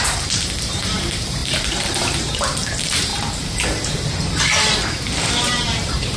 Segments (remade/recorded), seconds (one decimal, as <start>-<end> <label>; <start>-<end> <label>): 0.0-3.1 remade; 3.1-5.5 recorded; 5.5-6.2 remade